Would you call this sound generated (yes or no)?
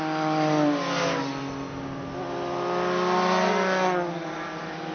no